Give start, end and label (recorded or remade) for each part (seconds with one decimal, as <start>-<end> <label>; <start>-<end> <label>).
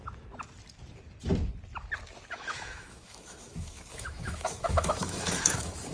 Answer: 0.0-2.3 recorded; 2.3-5.9 remade